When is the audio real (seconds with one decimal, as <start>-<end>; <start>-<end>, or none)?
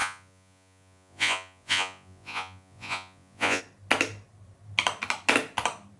3.6-6.0